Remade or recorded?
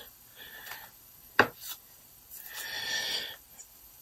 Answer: recorded